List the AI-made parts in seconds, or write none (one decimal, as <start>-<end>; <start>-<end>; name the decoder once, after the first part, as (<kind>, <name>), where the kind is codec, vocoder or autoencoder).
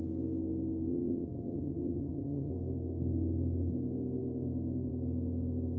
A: 0.9-2.5 (vocoder, HiFi-GAN)